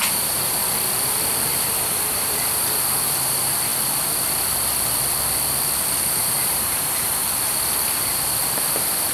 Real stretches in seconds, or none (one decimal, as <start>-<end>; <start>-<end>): 0.6-1.6; 3.7-6.0; 7.2-8.7